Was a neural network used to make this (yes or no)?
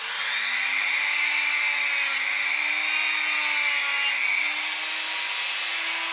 no